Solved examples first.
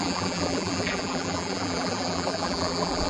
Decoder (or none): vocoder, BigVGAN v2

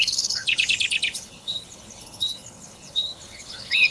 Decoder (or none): codec, HILCodec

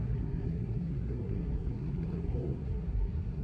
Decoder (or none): codec, SNAC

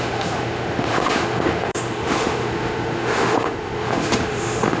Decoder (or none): autoencoder, DAC-VAE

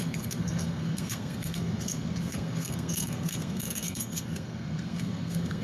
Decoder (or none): codec, SNAC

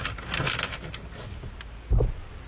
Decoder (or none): none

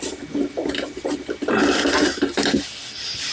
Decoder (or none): none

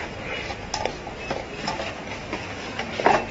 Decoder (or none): none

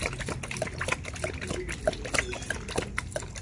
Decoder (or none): none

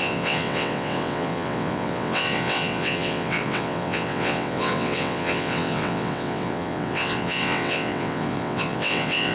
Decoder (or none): vocoder, WaveNeXt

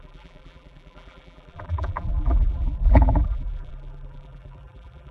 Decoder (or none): vocoder, BigVGAN v2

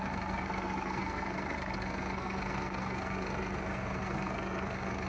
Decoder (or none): codec, SNAC